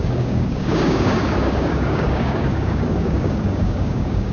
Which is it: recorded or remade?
remade